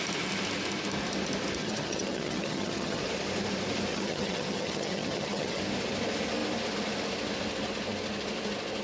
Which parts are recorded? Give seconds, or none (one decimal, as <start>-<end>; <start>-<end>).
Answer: 0.0-1.6; 3.0-3.9; 5.6-8.8